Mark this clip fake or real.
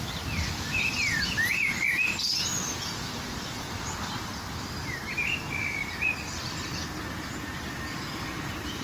fake